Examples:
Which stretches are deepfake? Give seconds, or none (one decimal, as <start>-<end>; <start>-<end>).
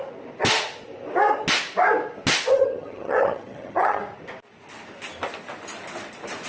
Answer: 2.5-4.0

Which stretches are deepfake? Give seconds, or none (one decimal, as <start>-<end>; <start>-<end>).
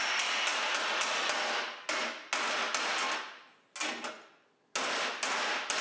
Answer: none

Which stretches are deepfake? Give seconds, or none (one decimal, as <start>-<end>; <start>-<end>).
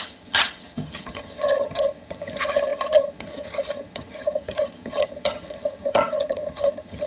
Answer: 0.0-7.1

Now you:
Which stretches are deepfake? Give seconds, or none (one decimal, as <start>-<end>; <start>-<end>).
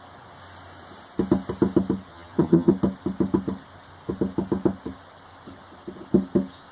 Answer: 2.1-2.7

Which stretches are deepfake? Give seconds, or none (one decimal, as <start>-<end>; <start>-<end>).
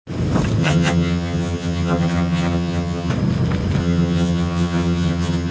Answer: 0.6-3.1; 3.8-5.5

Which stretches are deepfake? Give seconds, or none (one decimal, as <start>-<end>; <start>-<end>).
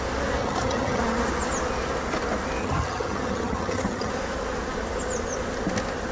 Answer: 0.4-1.0; 2.6-4.1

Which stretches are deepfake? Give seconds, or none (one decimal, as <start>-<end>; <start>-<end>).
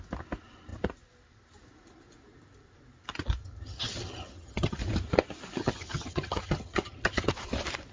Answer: 3.4-4.8; 5.6-7.3